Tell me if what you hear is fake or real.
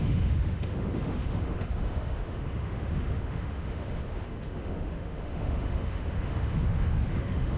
fake